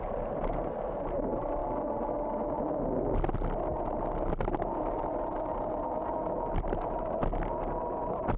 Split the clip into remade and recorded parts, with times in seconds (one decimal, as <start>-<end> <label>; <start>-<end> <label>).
0.0-1.6 remade; 1.6-6.6 recorded; 6.6-7.2 remade; 7.2-8.0 recorded; 8.0-8.4 remade